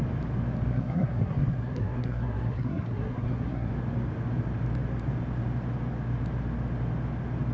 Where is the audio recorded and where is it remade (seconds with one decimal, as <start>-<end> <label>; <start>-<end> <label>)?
0.0-0.7 recorded; 0.7-3.7 remade; 3.7-7.5 recorded